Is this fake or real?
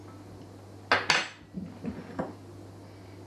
real